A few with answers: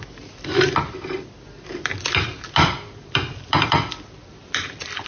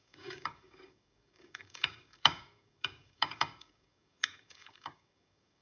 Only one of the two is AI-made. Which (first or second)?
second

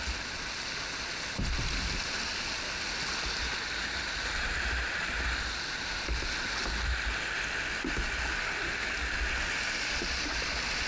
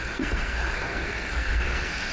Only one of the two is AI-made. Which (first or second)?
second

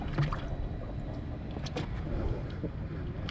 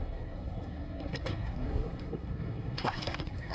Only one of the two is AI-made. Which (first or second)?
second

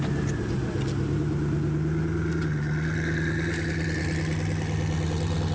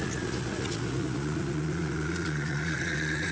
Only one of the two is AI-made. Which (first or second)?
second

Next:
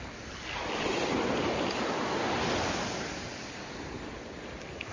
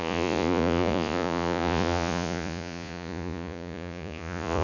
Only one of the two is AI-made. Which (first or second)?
second